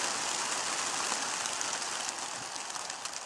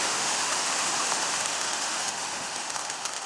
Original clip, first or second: first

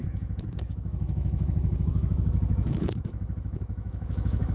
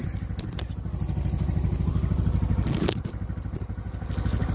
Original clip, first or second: second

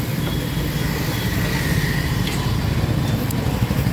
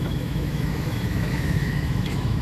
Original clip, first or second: first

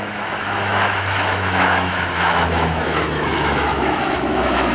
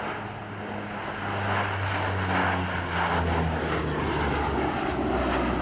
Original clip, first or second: second